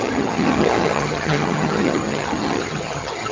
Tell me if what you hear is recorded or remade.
remade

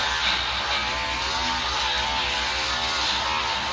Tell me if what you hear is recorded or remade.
recorded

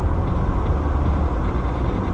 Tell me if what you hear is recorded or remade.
recorded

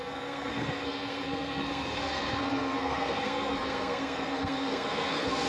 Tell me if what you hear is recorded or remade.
remade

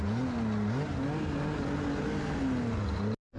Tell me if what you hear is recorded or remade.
recorded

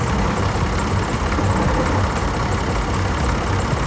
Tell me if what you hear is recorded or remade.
recorded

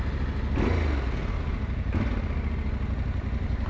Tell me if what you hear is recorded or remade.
recorded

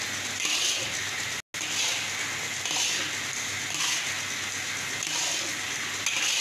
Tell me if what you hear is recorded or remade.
recorded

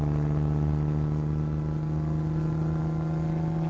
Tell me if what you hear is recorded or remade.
recorded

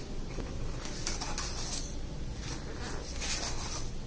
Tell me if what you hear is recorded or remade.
recorded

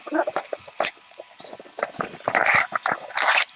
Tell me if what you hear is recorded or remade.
recorded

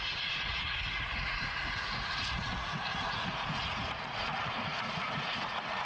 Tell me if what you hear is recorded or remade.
remade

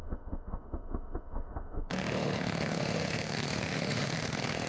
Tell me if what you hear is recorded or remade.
remade